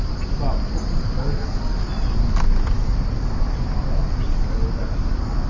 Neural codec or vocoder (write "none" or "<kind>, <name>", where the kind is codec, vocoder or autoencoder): none